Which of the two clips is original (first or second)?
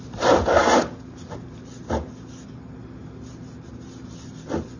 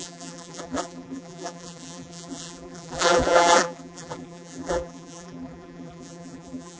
first